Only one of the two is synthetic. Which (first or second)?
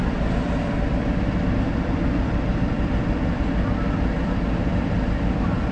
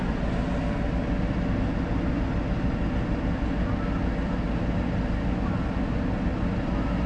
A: first